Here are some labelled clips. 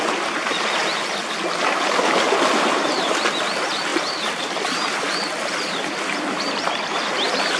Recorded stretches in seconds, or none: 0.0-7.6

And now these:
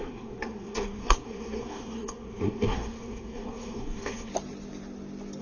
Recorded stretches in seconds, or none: 4.3-5.4

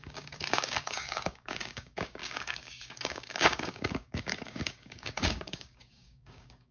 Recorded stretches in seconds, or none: none

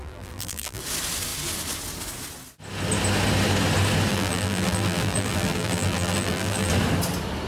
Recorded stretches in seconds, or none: 0.8-4.1; 6.7-7.5

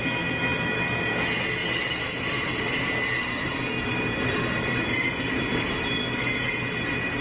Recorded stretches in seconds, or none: 0.0-1.6; 5.9-7.2

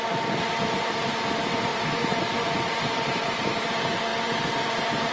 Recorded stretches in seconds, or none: 0.0-5.1

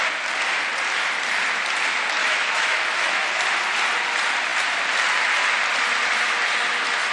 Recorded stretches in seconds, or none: 0.0-2.2; 3.4-7.1

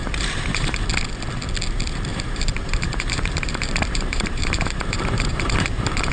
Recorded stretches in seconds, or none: 0.8-2.1